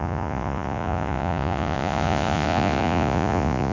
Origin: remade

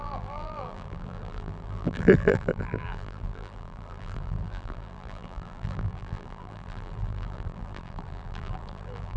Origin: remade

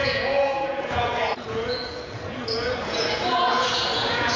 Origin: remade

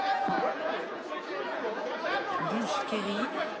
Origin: remade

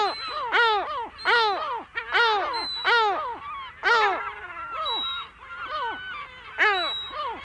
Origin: recorded